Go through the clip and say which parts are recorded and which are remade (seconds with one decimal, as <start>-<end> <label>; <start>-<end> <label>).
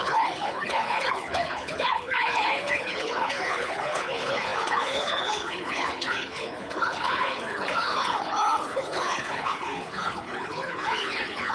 0.0-11.5 remade